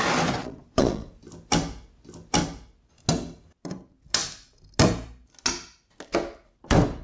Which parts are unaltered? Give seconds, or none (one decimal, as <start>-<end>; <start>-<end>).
0.0-0.4; 1.1-7.0